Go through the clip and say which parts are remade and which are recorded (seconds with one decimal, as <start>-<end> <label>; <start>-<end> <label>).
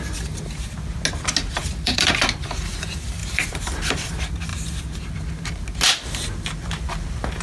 0.0-1.6 recorded; 1.6-2.1 remade; 2.1-3.2 recorded; 3.2-4.1 remade; 4.1-7.4 recorded